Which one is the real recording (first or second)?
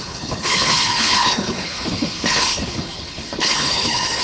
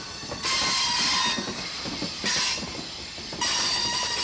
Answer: second